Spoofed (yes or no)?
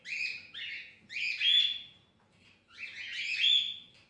no